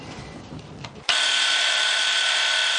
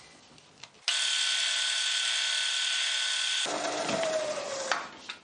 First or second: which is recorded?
second